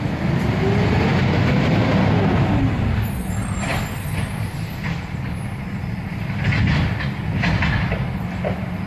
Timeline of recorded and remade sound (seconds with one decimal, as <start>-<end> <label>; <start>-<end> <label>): 0.0-8.9 recorded